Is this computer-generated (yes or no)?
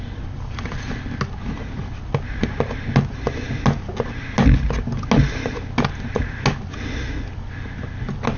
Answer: no